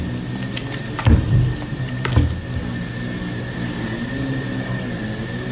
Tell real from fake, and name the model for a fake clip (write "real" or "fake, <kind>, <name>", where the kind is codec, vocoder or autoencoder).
real